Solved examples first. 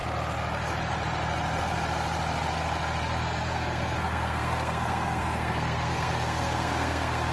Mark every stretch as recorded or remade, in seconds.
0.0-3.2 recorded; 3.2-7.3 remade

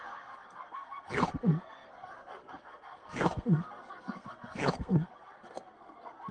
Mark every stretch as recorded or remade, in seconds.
0.0-6.3 remade